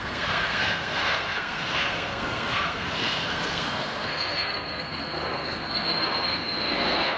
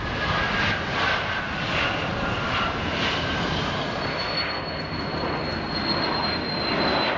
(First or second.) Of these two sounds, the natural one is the second